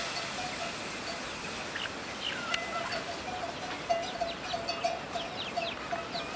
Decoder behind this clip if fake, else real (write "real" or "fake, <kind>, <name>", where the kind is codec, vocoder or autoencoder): real